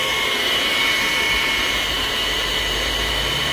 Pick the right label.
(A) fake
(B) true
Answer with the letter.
A